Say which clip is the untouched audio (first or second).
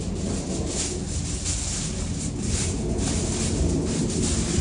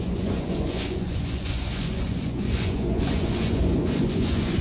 first